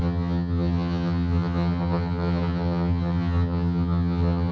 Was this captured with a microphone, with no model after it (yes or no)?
no